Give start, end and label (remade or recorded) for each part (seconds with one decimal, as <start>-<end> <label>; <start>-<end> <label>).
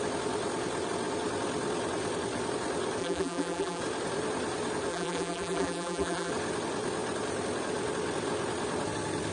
0.0-3.0 recorded; 3.0-3.8 remade; 3.8-4.9 recorded; 4.9-6.3 remade; 6.3-9.3 recorded